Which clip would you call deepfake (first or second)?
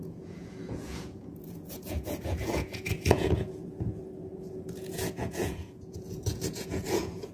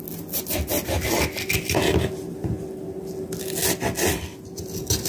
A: first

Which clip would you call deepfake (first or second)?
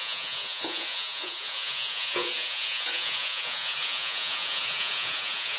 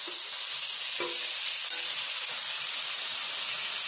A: first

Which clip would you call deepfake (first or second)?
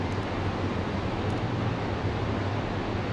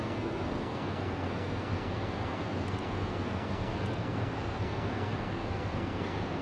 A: second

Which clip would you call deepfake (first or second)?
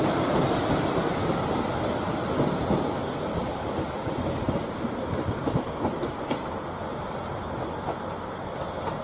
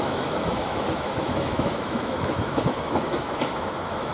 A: second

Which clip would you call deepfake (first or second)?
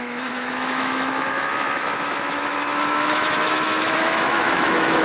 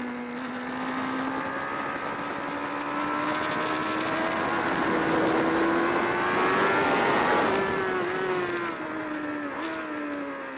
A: first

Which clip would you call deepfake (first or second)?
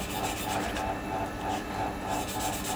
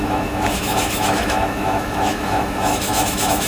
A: second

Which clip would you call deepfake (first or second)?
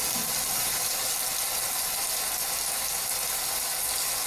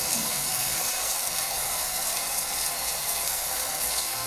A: second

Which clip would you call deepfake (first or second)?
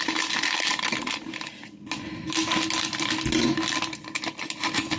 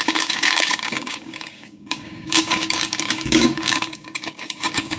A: second